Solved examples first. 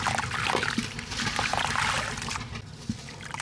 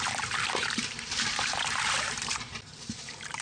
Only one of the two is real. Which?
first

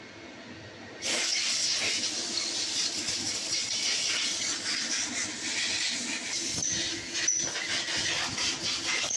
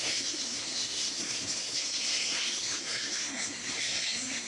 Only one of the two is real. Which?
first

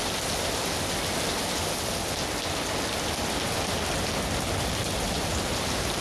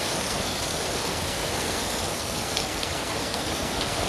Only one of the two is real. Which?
first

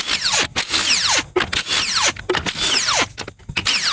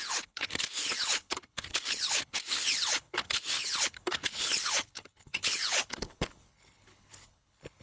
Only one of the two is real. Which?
first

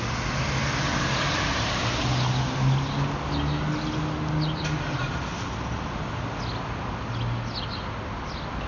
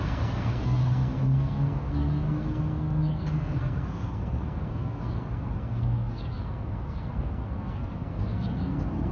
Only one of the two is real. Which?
first